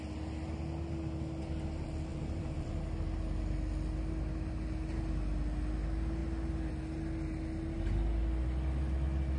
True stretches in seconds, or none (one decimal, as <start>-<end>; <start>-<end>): 0.0-2.1; 2.7-9.4